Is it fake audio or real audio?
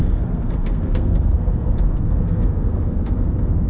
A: fake